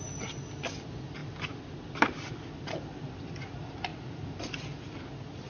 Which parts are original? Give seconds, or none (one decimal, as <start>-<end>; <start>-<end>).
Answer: 0.0-5.5